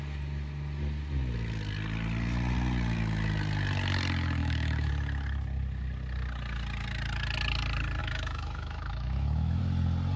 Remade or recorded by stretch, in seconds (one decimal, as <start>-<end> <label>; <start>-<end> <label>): 0.0-4.4 recorded; 4.4-4.9 remade; 4.9-8.0 recorded; 8.0-9.6 remade; 9.6-10.2 recorded